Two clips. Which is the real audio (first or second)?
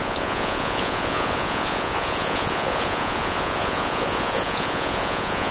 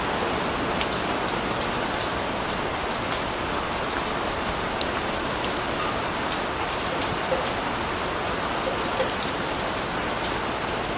second